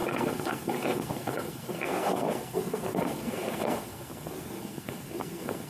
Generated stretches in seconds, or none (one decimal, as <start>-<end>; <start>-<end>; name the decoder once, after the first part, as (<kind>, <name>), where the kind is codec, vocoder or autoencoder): 0.0-5.7 (codec, SNAC)